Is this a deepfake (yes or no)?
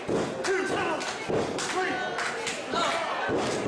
no